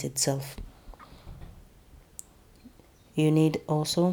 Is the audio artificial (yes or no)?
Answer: no